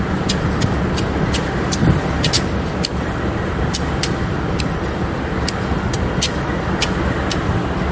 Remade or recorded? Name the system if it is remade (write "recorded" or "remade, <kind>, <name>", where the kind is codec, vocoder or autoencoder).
recorded